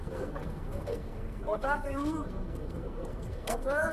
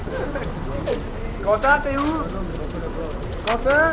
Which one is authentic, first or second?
second